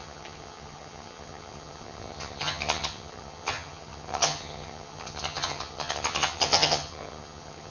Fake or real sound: fake